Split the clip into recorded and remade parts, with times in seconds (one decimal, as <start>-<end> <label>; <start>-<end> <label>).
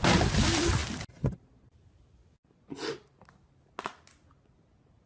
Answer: 0.0-5.1 recorded